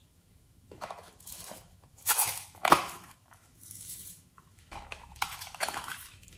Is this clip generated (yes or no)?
yes